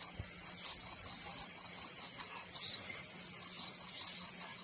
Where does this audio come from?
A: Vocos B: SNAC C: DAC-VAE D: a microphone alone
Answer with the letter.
D